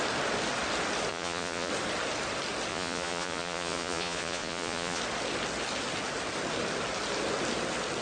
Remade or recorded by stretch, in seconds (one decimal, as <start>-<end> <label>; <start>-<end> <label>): 0.0-1.1 recorded; 1.1-1.7 remade; 1.7-2.7 recorded; 2.7-5.0 remade; 5.0-8.0 recorded